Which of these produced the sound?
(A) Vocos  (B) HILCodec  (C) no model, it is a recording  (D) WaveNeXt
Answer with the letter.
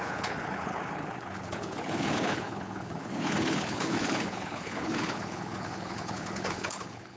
B